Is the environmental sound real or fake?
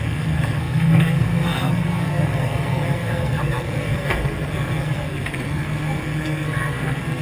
fake